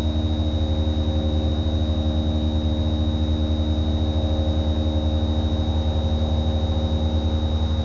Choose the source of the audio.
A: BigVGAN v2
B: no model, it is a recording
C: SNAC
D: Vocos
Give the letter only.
B